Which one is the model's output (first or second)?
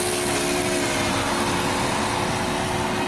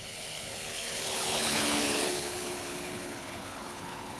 second